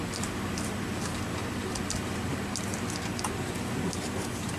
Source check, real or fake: real